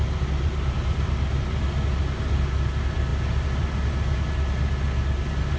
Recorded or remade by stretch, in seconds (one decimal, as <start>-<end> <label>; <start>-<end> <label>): 0.0-5.6 recorded